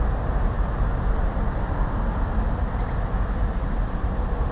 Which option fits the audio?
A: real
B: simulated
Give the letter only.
A